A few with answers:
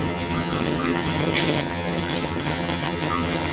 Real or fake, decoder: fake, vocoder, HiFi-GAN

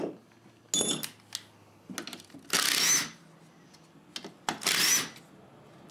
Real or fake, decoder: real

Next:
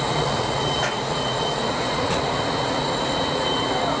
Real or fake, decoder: fake, vocoder, Vocos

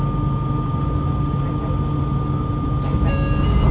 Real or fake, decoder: real